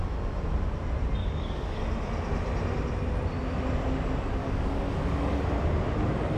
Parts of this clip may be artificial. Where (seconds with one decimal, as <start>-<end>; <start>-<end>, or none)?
1.2-1.8; 4.4-5.4